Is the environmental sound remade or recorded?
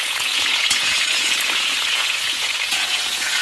remade